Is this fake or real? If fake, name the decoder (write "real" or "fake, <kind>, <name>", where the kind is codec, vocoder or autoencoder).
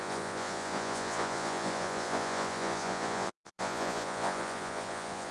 fake, vocoder, Vocos